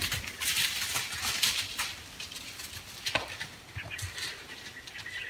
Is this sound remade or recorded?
recorded